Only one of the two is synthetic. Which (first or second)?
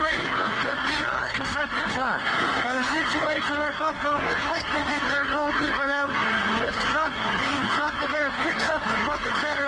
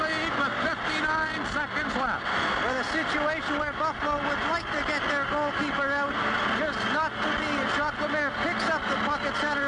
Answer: first